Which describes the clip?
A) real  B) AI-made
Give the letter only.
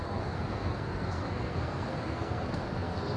B